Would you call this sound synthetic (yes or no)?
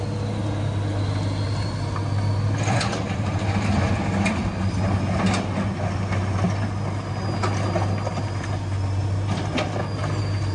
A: no